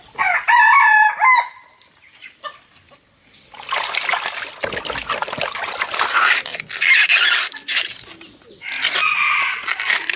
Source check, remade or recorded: recorded